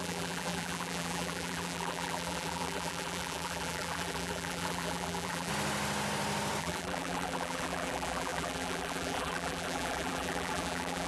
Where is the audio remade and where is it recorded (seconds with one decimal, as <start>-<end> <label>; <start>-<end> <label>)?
0.0-5.5 remade; 5.5-6.6 recorded; 6.6-11.1 remade